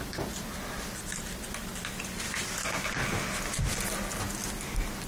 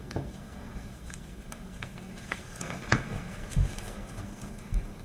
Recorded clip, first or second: first